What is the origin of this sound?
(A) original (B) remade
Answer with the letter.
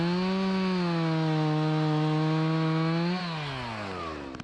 A